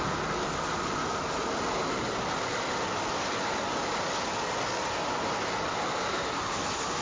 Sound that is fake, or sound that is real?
real